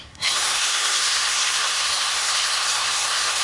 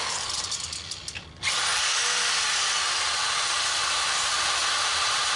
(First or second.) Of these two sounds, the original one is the second